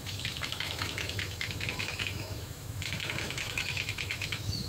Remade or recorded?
remade